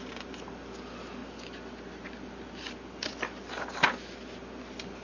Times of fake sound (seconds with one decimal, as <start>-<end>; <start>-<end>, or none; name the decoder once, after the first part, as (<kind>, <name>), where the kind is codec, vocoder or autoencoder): none